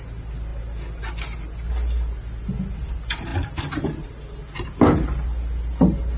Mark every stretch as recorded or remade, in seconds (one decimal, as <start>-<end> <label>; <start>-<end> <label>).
0.0-6.2 recorded